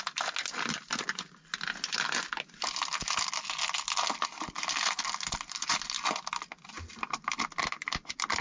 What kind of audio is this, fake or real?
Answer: real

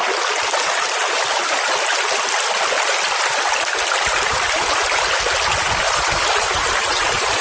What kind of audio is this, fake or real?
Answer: real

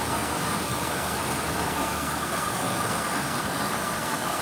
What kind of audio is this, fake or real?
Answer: fake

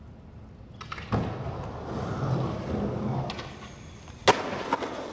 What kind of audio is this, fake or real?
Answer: real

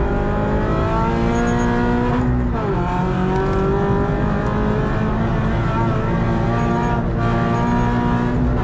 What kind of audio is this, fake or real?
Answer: real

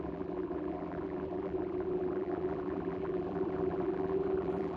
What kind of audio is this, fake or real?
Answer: fake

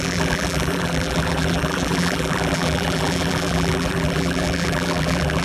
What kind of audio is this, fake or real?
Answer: fake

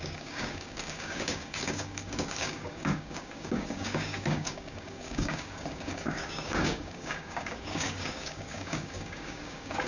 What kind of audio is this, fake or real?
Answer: fake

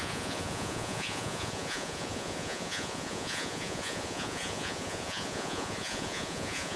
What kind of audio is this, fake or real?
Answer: fake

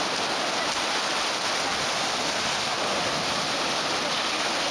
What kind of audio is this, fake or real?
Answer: real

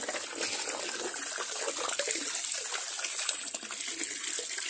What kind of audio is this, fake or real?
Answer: real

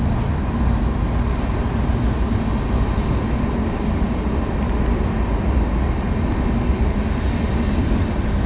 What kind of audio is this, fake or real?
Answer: real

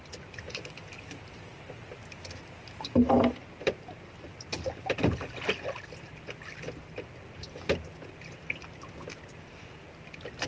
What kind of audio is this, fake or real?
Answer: real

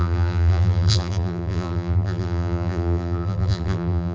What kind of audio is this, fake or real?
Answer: fake